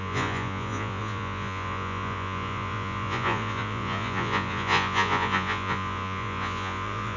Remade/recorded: remade